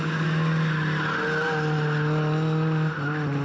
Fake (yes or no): no